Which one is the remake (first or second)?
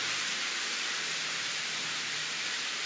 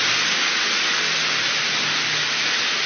first